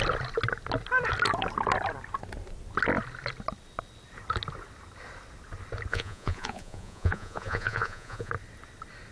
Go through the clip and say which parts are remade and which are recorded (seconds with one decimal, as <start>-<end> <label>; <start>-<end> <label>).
0.0-5.9 recorded; 5.9-8.3 remade; 8.3-9.1 recorded